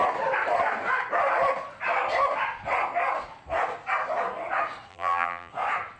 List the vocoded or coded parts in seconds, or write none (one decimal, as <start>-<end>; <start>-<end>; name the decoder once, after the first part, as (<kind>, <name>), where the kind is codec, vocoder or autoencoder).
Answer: 4.9-5.5 (vocoder, BigVGAN v2)